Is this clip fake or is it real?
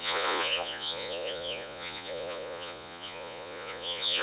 fake